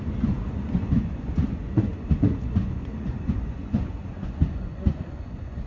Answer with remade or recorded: remade